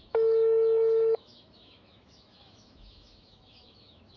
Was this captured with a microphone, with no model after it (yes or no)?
no